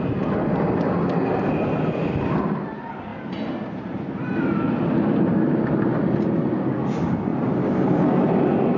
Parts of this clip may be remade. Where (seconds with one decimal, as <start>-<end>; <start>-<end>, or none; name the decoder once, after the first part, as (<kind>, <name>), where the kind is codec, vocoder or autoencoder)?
3.1-6.0 (vocoder, BigVGAN v2); 7.3-8.0